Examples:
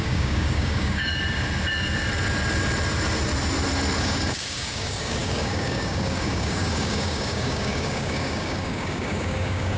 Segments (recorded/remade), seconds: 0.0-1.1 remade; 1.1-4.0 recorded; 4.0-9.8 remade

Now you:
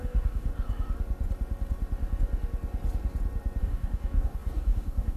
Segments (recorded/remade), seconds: 0.0-0.5 remade; 0.5-3.6 recorded; 3.6-5.2 remade

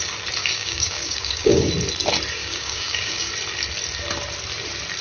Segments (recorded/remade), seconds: 0.0-0.4 recorded; 0.4-1.7 remade; 1.7-2.4 recorded; 2.4-3.3 remade; 3.3-5.0 recorded

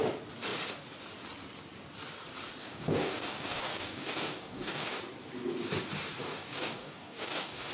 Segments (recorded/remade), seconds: 0.0-2.6 recorded; 2.6-5.0 remade; 5.0-6.2 recorded; 6.2-7.7 remade

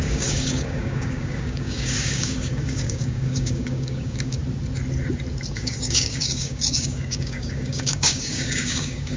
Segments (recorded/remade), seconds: 0.0-4.4 remade; 4.4-5.5 recorded; 5.5-9.2 remade